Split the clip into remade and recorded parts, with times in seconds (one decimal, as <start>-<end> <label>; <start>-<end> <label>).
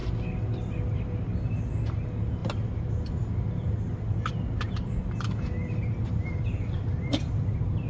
0.0-7.9 recorded